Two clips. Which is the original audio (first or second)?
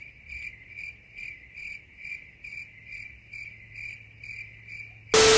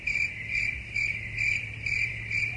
first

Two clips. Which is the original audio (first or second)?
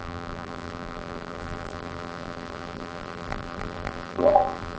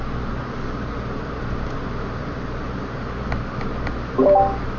second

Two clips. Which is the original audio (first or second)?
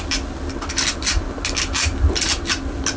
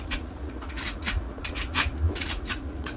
first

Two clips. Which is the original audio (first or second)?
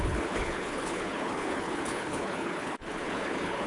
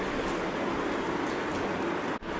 second